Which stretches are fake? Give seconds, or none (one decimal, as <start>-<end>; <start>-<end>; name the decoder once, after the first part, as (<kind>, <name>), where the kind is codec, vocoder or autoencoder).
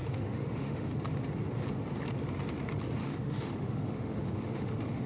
0.0-0.9 (autoencoder, DAC-VAE); 3.0-5.1